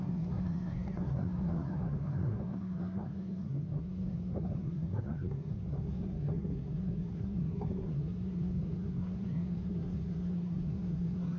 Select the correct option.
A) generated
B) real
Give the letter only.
A